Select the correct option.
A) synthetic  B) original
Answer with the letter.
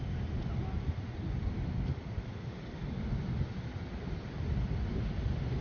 B